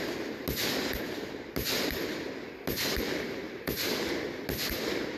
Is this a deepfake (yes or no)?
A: no